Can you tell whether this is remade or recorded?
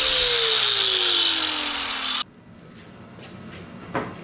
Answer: recorded